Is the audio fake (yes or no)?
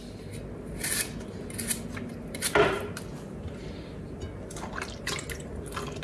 no